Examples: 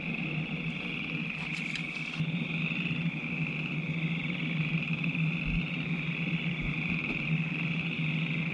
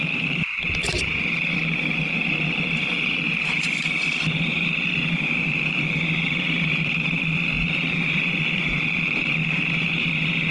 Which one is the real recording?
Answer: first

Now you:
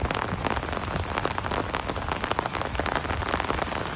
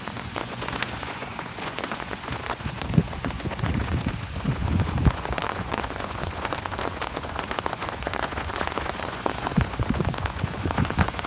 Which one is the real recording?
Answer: first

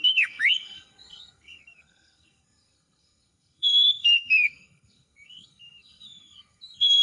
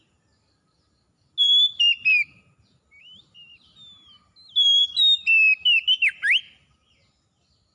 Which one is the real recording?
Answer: second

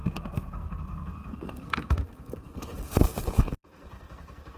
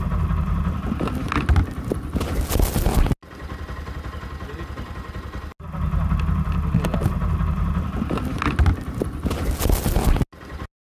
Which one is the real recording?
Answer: second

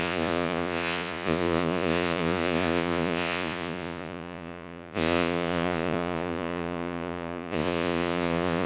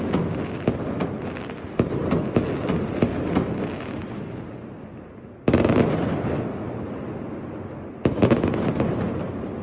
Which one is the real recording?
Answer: second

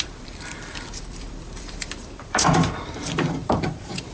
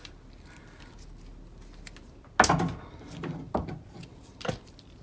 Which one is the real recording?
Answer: second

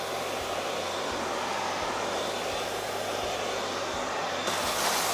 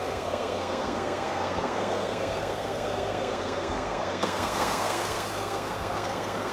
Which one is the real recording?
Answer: first